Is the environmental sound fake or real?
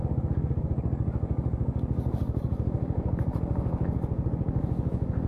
fake